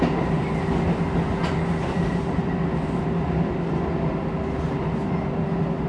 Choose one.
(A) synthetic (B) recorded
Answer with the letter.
B